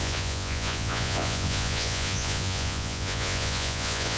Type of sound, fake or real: fake